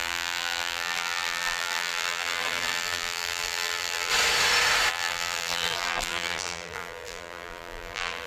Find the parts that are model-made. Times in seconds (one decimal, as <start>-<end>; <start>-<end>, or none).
0.0-4.1; 4.9-8.3